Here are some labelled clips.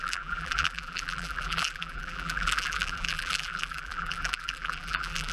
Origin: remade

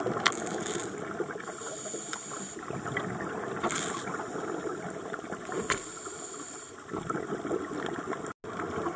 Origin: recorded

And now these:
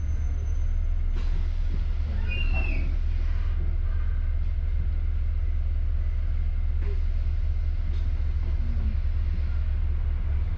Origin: recorded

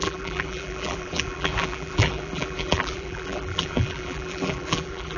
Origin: remade